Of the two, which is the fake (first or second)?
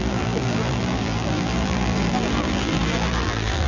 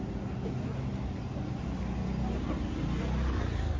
first